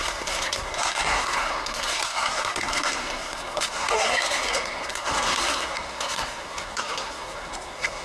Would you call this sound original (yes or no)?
no